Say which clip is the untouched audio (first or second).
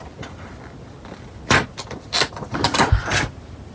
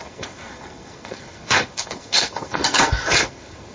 first